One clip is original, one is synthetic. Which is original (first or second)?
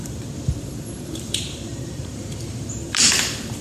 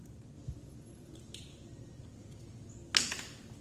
second